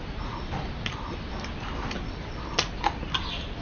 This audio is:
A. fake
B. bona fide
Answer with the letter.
B